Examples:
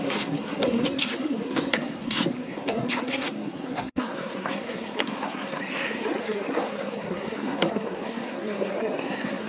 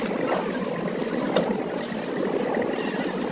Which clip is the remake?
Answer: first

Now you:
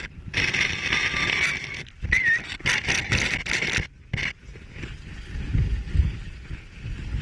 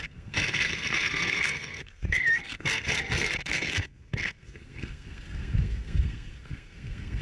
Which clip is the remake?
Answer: second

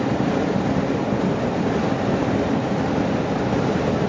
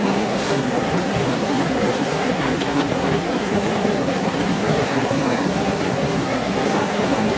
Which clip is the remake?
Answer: second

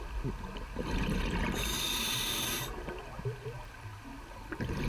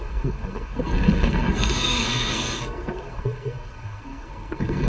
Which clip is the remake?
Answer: second